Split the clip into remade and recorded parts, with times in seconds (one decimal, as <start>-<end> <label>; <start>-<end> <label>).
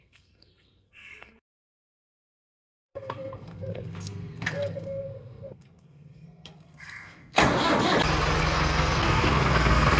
0.0-7.4 remade; 7.4-8.4 recorded; 8.4-10.0 remade